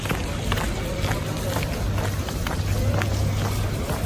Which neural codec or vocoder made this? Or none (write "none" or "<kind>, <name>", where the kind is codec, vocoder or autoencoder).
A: none